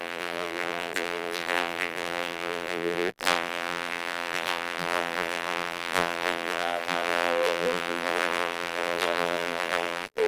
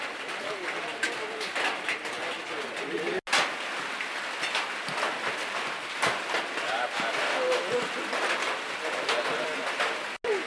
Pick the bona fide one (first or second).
second